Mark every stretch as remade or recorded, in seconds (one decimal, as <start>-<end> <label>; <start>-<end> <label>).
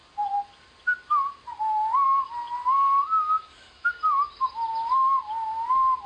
0.0-3.0 recorded; 3.0-3.9 remade; 3.9-6.1 recorded